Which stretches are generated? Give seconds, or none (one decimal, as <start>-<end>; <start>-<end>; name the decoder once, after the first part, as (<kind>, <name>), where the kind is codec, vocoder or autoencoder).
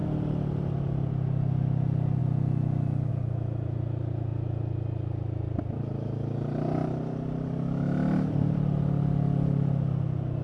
none